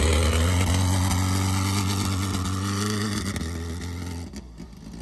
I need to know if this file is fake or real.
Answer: real